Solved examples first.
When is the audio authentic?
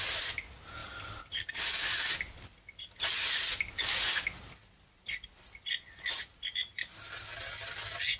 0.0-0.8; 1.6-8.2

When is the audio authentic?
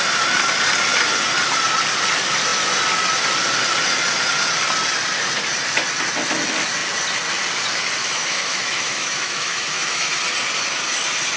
0.0-8.0; 10.1-11.4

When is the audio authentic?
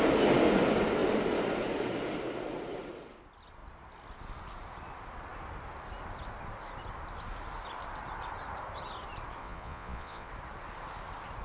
0.0-9.4; 10.3-11.4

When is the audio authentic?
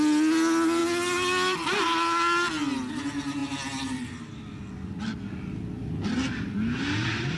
0.0-7.4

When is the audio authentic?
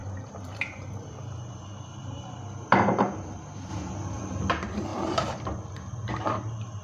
3.7-4.5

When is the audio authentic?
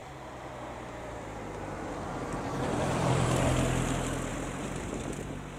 3.4-4.3; 4.9-5.6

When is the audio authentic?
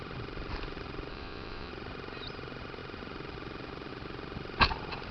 0.0-1.1; 1.7-5.1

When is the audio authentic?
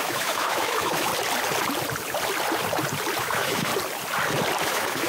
1.1-3.2; 3.7-4.6